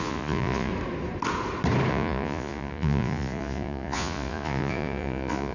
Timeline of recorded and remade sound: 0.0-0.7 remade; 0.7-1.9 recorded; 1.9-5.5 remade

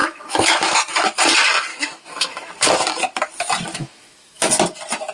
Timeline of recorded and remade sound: 0.0-0.8 remade; 0.8-1.7 recorded; 1.7-2.5 remade; 2.5-3.7 recorded; 3.7-4.5 remade; 4.5-5.1 recorded

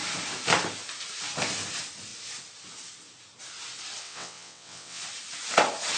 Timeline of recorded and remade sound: 0.0-4.0 recorded; 4.0-5.0 remade; 5.0-6.0 recorded

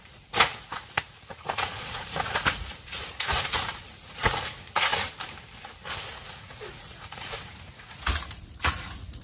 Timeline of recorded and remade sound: 0.0-4.9 remade; 4.9-6.0 recorded; 6.0-9.2 remade

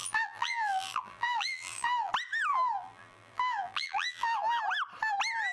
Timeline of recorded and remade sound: 0.0-2.1 remade; 2.1-2.5 recorded; 2.5-4.6 remade; 4.6-5.5 recorded